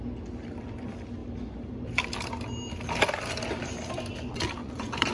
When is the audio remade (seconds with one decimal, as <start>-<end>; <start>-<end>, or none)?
4.6-5.1